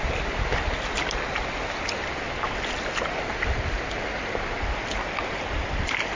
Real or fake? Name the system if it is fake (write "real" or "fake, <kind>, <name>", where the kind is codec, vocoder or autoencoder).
real